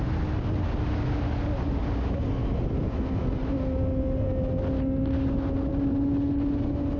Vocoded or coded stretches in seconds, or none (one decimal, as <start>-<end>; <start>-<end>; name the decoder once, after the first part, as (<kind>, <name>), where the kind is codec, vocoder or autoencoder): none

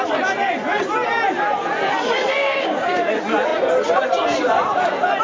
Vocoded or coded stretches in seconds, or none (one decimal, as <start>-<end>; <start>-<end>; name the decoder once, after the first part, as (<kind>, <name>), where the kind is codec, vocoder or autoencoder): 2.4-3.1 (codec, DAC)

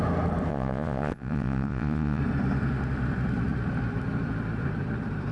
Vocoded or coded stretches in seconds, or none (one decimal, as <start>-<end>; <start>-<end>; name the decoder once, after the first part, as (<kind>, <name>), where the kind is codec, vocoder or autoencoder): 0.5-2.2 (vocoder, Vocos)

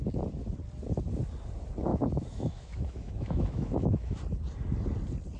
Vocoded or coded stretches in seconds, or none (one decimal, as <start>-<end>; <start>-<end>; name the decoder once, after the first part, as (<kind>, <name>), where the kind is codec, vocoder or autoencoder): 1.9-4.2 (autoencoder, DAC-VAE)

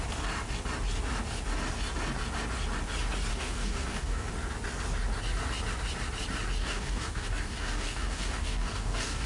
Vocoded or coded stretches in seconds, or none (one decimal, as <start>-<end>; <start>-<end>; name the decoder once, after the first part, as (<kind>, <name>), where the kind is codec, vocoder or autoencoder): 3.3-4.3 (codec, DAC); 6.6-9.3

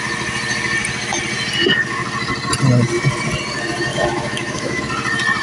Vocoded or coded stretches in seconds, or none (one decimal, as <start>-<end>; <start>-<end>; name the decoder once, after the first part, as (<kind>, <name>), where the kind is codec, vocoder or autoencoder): 3.9-4.8 (autoencoder, DAC-VAE)

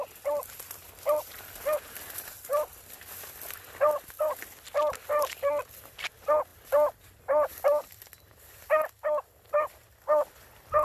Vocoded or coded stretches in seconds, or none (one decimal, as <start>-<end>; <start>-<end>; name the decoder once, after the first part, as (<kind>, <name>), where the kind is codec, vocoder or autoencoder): none

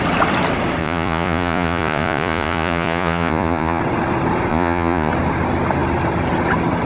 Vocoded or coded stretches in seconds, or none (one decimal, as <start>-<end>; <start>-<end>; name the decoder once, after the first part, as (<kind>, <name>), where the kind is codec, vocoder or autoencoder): 0.8-3.8 (vocoder, Vocos); 4.5-5.1